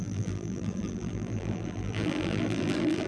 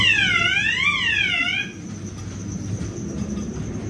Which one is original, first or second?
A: second